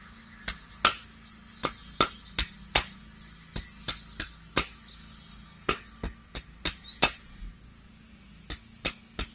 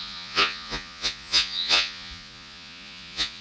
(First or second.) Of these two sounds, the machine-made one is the second